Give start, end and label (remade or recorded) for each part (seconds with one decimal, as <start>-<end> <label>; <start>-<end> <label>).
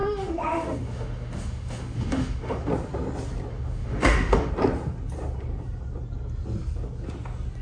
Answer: 0.0-2.7 remade; 2.7-3.5 recorded; 3.5-4.5 remade; 4.5-7.6 recorded